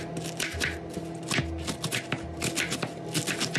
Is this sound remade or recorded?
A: recorded